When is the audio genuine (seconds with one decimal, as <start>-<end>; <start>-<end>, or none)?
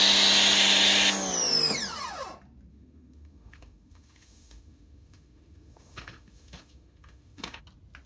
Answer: 0.0-2.7; 7.6-8.1